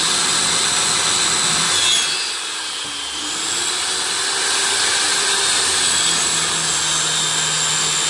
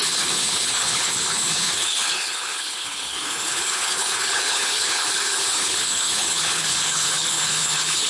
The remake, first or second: second